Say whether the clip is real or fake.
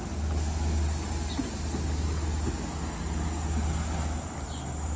real